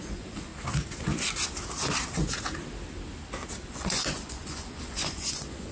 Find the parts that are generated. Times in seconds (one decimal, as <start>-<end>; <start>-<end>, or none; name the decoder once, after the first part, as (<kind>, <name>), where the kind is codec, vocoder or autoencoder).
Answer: 0.0-0.5 (vocoder, Vocos); 3.7-5.7